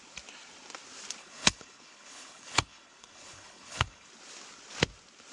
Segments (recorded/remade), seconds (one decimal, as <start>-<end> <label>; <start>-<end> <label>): 0.0-1.2 recorded; 1.2-4.1 remade; 4.1-5.3 recorded